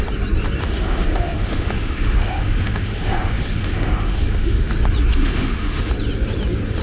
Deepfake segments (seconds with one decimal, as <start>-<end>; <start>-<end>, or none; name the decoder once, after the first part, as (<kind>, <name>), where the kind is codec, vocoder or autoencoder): 0.6-4.7 (autoencoder, DAC-VAE); 5.2-5.9

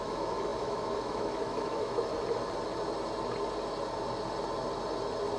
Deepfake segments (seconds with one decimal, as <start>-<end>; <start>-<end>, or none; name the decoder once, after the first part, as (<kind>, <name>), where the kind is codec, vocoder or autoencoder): 0.0-2.1 (autoencoder, DAC-VAE)

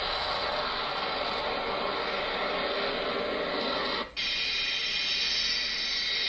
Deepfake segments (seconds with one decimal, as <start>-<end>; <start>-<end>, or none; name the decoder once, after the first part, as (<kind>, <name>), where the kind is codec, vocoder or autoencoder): none

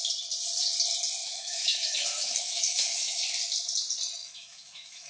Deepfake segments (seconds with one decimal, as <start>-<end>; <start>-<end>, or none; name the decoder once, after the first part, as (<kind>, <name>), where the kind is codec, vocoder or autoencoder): 1.2-3.2 (autoencoder, DAC-VAE); 4.2-5.1

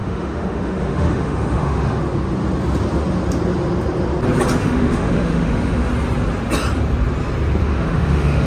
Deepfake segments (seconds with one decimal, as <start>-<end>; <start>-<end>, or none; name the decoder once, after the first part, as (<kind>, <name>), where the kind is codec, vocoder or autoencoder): 0.0-2.0 (autoencoder, DAC-VAE); 4.6-5.9; 7.6-8.5

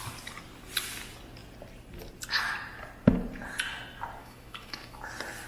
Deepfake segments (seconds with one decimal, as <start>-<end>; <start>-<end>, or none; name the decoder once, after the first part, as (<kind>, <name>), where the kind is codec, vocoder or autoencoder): 4.2-5.0 (autoencoder, DAC-VAE)

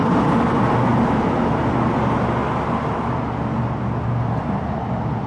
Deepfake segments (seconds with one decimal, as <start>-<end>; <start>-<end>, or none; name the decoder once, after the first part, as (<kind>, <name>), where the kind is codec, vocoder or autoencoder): none